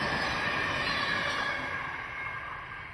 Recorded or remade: recorded